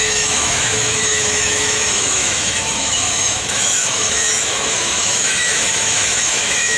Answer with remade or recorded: remade